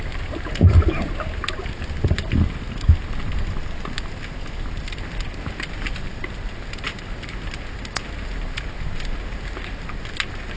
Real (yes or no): yes